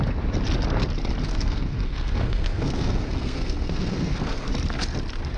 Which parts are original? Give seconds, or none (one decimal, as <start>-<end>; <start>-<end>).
0.0-1.3; 4.5-5.4